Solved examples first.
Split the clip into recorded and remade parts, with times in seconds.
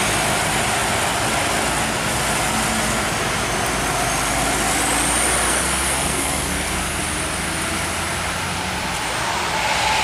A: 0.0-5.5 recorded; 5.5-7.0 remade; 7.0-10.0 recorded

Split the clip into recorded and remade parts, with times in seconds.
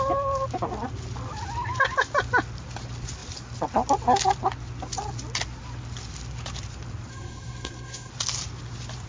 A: 0.0-7.1 recorded; 7.1-8.1 remade; 8.1-9.1 recorded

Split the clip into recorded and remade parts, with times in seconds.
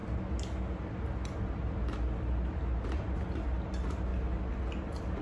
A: 0.0-5.2 recorded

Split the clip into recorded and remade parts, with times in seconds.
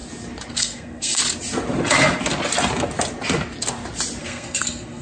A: 0.0-0.5 recorded; 0.5-1.2 remade; 1.2-4.2 recorded; 4.2-5.0 remade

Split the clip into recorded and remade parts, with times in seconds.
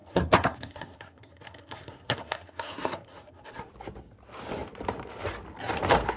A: 0.0-3.7 remade; 3.7-6.2 recorded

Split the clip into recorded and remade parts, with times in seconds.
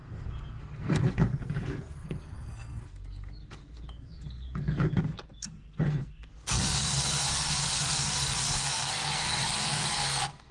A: 0.0-10.5 remade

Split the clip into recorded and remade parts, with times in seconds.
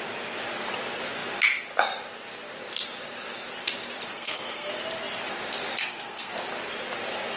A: 0.0-4.1 recorded; 4.1-4.7 remade; 4.7-5.8 recorded; 5.8-6.3 remade; 6.3-7.4 recorded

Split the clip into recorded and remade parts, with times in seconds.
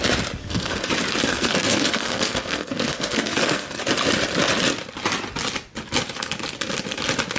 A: 0.0-0.4 recorded; 0.4-0.9 remade; 0.9-1.3 recorded; 1.3-3.8 remade; 3.8-7.4 recorded